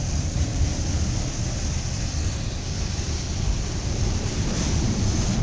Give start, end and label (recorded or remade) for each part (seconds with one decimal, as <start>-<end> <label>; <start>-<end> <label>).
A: 0.0-0.7 remade; 0.7-3.9 recorded; 3.9-5.4 remade